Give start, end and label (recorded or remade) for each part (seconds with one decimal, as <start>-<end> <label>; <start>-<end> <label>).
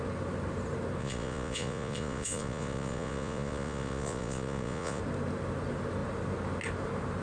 0.0-1.0 recorded; 1.0-5.0 remade; 5.0-7.2 recorded